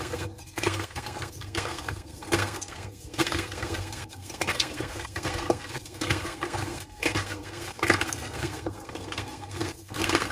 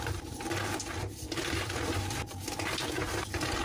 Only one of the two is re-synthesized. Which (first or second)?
first